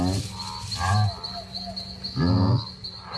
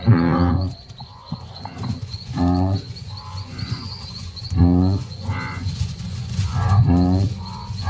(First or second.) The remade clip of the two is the second